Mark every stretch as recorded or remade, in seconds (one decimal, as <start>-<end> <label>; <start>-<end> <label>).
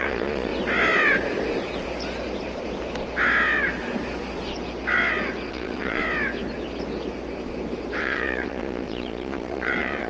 0.0-0.5 remade; 0.5-5.5 recorded; 5.5-6.0 remade; 6.0-8.0 recorded; 8.0-10.1 remade